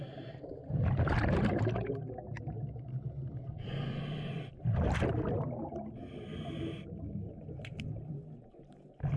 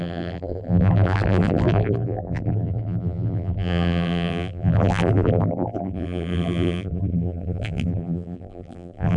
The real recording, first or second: first